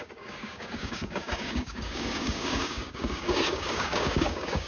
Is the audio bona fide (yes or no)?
no